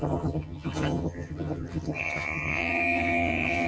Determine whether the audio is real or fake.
fake